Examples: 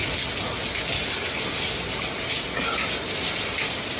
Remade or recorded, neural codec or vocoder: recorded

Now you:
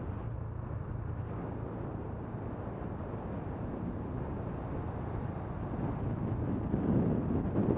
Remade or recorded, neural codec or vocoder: recorded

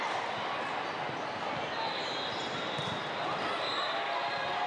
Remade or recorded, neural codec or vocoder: recorded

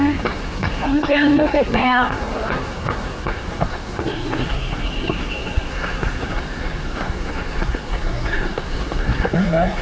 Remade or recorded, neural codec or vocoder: remade, codec, SNAC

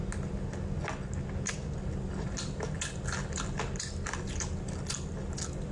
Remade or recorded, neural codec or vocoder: recorded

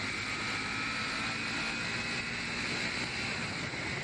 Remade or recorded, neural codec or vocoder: recorded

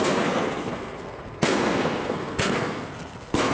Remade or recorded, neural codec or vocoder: remade, codec, SNAC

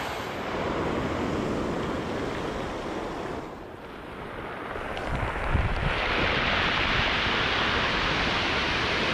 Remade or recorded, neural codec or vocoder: recorded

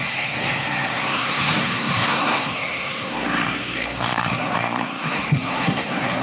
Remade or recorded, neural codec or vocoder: remade, codec, SNAC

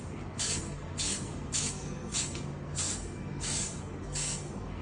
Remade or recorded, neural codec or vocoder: remade, codec, SNAC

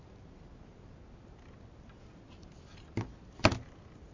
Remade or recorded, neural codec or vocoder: recorded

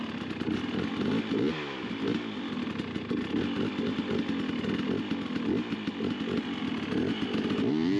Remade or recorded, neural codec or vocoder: recorded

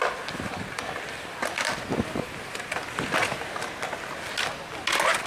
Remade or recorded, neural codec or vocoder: recorded